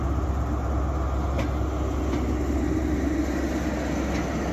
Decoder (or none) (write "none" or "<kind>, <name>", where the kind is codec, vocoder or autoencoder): none